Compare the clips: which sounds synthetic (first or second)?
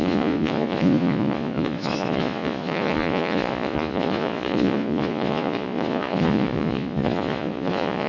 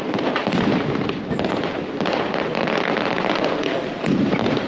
first